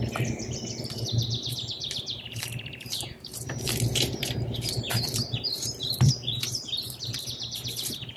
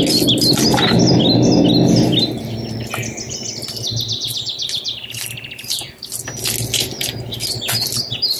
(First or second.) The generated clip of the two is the first